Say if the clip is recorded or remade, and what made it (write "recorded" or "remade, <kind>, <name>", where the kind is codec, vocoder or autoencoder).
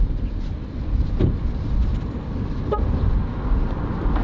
recorded